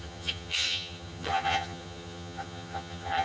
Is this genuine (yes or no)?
no